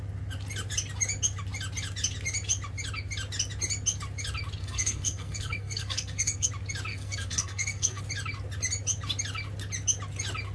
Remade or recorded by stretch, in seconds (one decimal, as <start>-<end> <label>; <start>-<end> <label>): 0.0-4.6 recorded; 4.6-6.5 remade; 6.5-6.9 recorded; 6.9-8.0 remade; 8.0-10.5 recorded